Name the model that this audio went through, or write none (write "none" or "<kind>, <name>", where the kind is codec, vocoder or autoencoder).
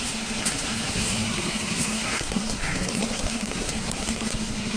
codec, SNAC